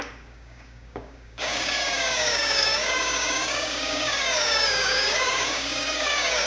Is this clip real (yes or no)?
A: no